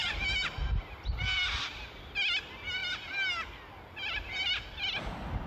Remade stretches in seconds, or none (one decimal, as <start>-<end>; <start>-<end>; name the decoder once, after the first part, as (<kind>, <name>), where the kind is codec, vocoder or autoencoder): none